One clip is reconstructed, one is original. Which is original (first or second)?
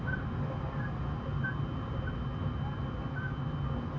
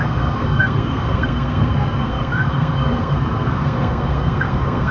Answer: first